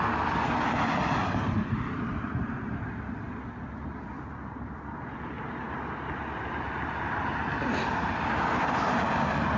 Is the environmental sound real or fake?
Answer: real